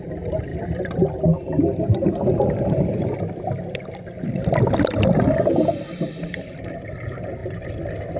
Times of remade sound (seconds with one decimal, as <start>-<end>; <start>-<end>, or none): none